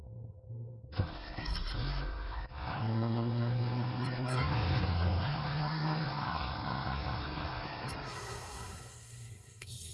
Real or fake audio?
fake